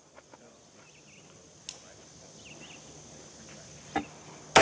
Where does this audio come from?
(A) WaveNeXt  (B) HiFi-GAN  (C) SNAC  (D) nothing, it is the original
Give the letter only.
D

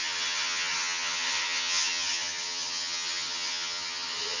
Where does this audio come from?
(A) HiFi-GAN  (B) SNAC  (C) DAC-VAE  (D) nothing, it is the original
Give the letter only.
A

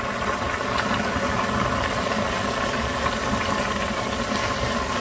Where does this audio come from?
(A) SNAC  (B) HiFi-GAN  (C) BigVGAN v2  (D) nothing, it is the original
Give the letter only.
D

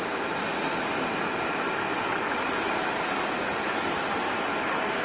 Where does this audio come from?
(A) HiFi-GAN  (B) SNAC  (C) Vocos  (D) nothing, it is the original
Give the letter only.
D